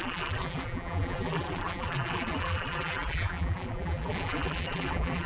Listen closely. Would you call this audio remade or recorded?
remade